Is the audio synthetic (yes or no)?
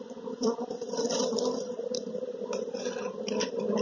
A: yes